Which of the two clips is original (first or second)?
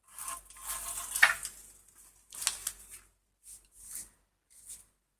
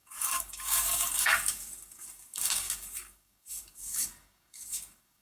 first